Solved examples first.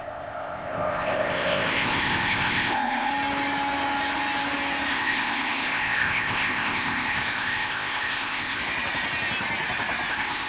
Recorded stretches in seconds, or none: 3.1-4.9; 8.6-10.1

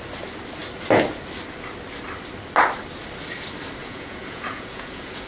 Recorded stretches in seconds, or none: 0.0-3.8

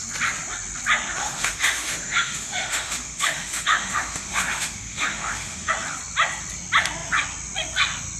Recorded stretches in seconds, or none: 0.0-1.2; 5.7-8.2

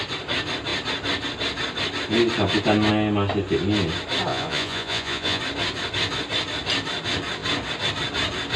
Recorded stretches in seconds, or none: 0.0-4.3; 5.4-8.6

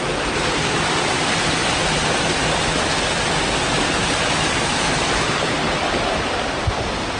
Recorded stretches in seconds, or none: 0.0-7.2